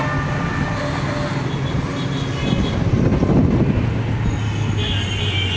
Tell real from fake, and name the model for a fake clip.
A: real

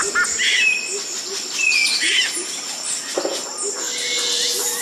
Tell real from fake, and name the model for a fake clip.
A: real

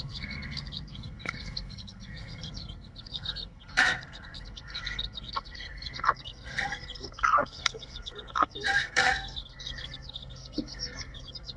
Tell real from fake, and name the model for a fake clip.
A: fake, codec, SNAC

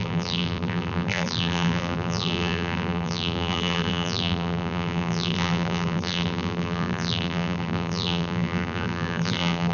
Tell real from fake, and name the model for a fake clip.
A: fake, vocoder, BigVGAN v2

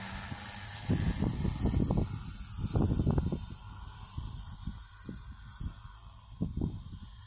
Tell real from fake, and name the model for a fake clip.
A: real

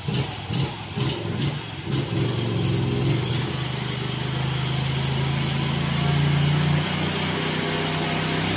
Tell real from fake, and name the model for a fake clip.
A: real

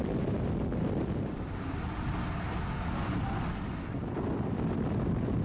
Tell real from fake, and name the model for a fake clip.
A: real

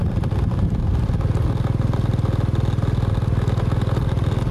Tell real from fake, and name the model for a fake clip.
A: real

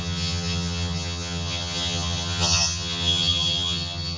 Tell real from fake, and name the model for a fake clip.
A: fake, vocoder, HiFi-GAN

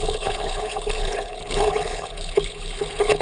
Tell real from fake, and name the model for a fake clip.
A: fake, codec, HILCodec